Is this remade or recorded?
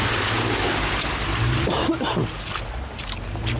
recorded